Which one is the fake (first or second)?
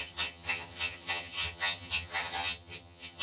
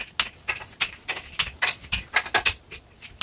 first